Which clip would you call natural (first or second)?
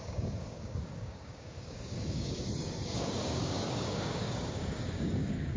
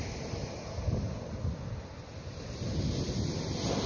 second